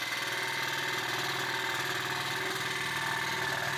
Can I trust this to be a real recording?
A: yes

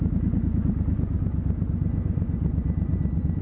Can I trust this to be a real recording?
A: yes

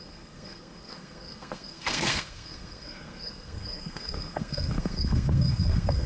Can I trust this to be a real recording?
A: no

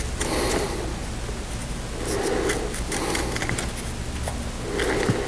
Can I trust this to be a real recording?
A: yes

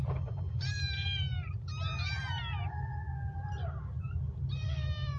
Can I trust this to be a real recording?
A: yes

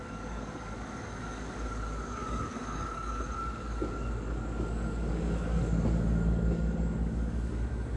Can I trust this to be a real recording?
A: no